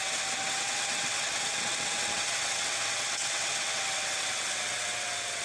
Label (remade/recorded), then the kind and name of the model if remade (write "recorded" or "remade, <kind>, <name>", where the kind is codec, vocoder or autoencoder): remade, vocoder, WaveNeXt